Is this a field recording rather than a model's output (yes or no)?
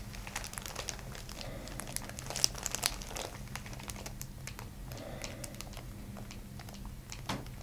yes